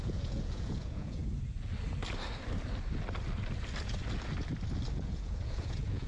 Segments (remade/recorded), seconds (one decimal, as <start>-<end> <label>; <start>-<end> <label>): 0.0-1.2 remade; 1.2-4.9 recorded; 4.9-6.1 remade